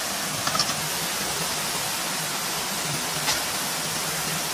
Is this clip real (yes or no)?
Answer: yes